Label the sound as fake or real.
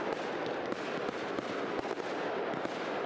real